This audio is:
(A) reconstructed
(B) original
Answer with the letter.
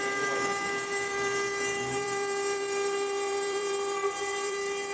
A